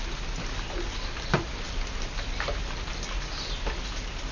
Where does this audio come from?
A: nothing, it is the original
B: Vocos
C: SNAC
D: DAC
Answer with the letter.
A